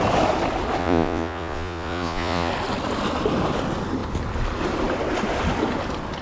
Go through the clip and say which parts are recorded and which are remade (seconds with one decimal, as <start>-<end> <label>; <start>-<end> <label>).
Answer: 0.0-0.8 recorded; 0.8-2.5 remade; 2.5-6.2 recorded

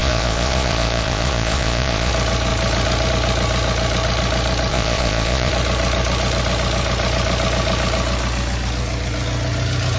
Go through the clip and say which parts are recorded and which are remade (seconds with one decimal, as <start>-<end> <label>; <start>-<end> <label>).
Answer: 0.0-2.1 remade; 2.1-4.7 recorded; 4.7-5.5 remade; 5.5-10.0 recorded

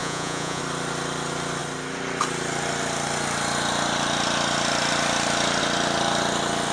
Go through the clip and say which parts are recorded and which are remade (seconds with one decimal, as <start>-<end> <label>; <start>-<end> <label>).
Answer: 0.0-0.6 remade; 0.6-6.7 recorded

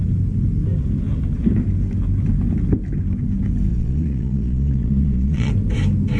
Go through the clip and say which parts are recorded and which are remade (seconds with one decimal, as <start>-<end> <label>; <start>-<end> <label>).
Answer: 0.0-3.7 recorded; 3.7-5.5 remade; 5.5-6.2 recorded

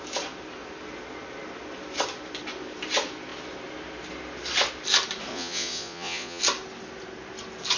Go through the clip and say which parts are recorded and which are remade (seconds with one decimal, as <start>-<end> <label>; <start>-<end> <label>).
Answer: 0.0-5.3 recorded; 5.3-6.4 remade; 6.4-7.8 recorded

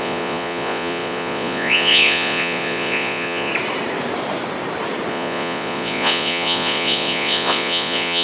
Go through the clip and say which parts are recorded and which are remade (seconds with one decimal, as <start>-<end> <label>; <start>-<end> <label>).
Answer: 0.0-3.5 remade; 3.5-5.1 recorded; 5.1-8.2 remade

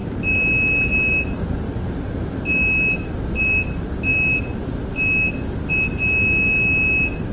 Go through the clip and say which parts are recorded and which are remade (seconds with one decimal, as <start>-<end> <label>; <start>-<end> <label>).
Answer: 0.0-7.3 recorded